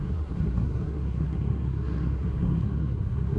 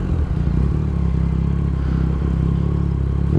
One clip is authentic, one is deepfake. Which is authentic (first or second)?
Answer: second